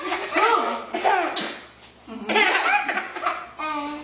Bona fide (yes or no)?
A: yes